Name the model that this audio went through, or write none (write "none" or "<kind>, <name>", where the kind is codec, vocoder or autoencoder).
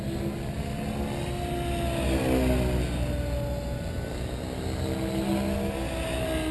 none